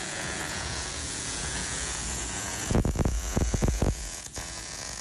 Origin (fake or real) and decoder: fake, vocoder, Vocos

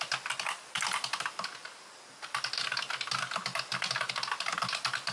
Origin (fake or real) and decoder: real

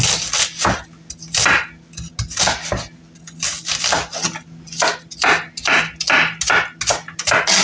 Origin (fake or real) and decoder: real